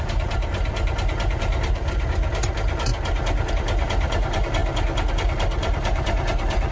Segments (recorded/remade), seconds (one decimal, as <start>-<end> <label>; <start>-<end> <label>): 0.0-2.9 remade; 2.9-3.5 recorded; 3.5-4.6 remade; 4.6-5.1 recorded; 5.1-6.7 remade